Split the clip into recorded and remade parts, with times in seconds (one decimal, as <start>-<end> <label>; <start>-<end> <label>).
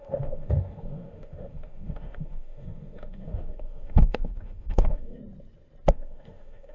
0.0-5.2 remade; 5.2-5.9 recorded; 5.9-6.7 remade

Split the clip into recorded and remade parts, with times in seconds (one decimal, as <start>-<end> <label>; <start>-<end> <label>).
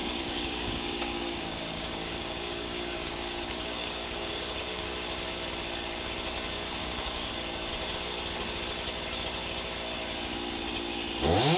0.0-4.9 remade; 4.9-6.8 recorded; 6.8-7.3 remade; 7.3-11.6 recorded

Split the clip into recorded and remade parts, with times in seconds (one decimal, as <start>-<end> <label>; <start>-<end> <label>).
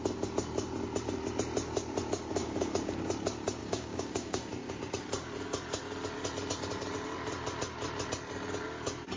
0.0-2.4 recorded; 2.4-3.1 remade; 3.1-3.6 recorded; 3.6-4.8 remade; 4.8-9.2 recorded